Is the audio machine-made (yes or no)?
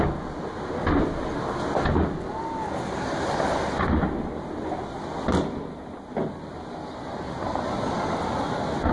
no